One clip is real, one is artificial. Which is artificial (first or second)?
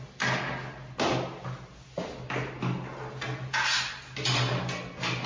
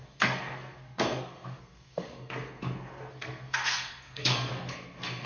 second